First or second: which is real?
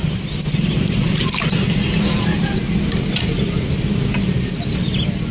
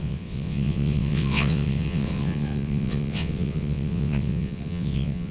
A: first